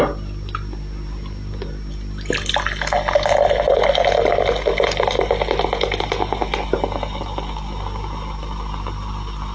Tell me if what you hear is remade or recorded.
recorded